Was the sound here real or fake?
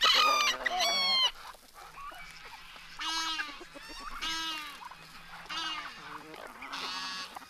real